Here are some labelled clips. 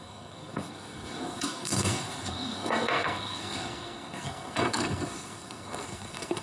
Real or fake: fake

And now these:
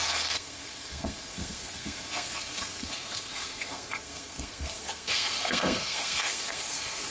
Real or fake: fake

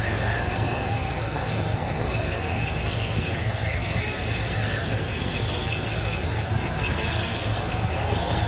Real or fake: fake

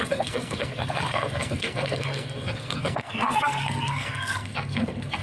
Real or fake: fake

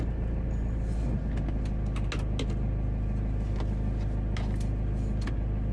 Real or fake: real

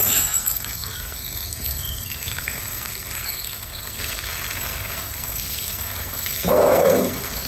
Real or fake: fake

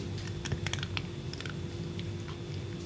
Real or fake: real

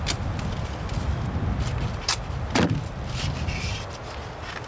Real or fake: real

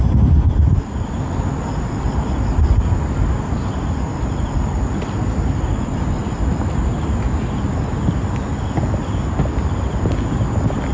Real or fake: real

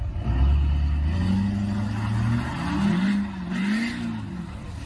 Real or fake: real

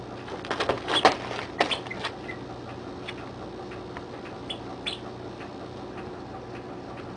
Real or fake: real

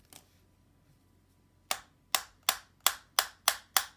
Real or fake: real